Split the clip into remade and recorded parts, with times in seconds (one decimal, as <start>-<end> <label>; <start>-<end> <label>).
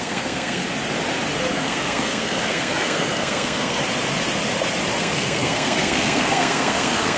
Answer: 0.0-0.6 remade; 0.6-1.5 recorded; 1.5-3.8 remade; 3.8-5.0 recorded; 5.0-7.2 remade